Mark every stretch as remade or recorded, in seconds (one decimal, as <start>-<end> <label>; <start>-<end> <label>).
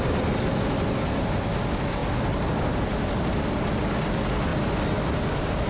0.0-5.7 recorded